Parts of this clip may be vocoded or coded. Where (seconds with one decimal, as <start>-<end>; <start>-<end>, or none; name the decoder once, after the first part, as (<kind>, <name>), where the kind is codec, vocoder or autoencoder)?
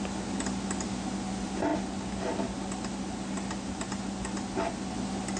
none